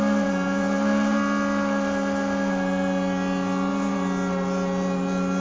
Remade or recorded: recorded